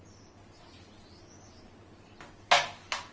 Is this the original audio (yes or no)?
yes